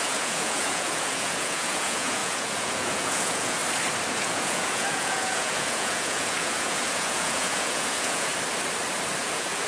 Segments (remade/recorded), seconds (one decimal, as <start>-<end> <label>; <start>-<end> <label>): 0.0-3.6 remade; 3.6-4.1 recorded; 4.1-8.3 remade; 8.3-9.2 recorded; 9.2-9.7 remade